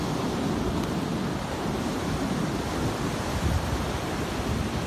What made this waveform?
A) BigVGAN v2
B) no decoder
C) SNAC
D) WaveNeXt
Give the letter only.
B